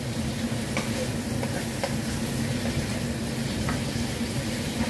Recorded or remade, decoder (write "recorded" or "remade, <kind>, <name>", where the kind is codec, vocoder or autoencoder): recorded